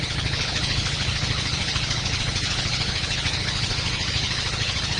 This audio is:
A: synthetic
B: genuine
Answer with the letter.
A